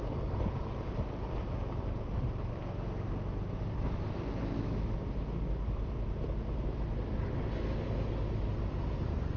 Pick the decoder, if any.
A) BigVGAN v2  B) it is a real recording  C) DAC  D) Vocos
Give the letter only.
B